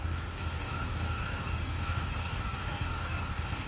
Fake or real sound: fake